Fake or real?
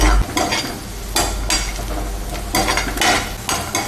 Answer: real